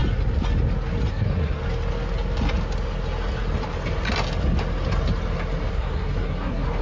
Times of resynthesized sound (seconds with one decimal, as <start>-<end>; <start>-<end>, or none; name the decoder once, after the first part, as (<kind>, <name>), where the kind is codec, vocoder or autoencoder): 1.1-1.6 (codec, SNAC); 5.7-6.8